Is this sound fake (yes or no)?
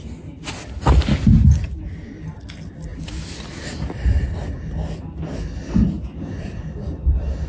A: no